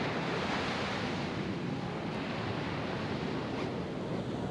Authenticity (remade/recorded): recorded